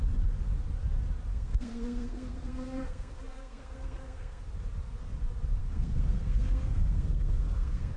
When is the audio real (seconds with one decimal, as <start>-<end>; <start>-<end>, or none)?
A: 0.0-1.3; 4.4-5.6